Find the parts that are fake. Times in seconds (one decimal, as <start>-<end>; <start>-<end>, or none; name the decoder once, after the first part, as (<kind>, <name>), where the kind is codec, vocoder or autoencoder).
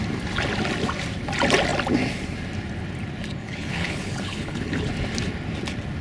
3.4-4.9 (codec, HILCodec)